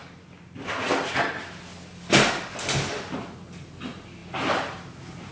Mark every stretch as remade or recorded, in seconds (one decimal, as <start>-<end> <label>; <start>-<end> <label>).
0.0-5.3 recorded